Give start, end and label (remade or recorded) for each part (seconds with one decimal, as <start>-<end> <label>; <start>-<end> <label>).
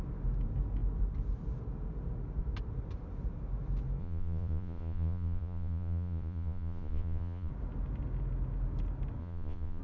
0.0-4.0 recorded; 4.0-7.5 remade; 7.5-9.2 recorded; 9.2-9.8 remade